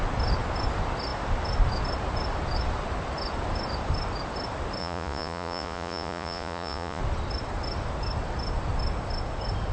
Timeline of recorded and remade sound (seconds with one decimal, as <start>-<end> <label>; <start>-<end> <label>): 0.0-4.8 recorded; 4.8-7.0 remade; 7.0-9.7 recorded